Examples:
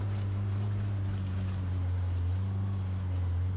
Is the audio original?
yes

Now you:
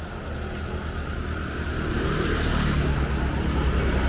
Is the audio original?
yes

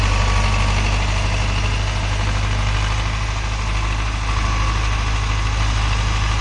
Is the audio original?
yes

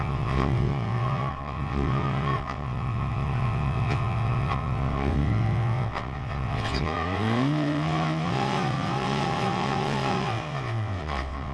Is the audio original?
no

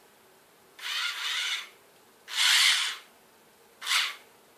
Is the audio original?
yes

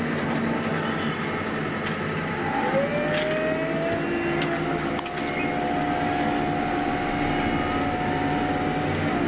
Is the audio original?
yes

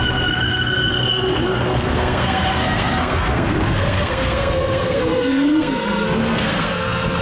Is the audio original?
no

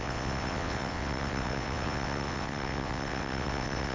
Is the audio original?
no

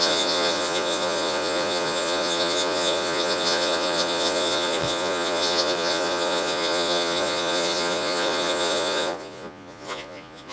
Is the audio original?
no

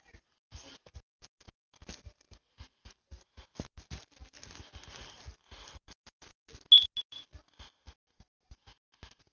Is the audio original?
yes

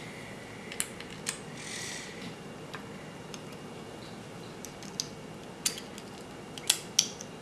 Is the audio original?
yes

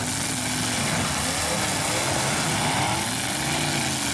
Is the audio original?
yes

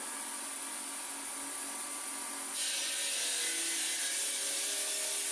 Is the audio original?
yes